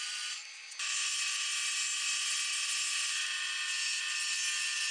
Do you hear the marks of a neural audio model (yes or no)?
no